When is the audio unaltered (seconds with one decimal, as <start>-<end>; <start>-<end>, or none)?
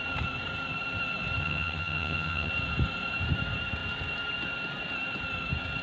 0.0-1.4; 2.5-5.8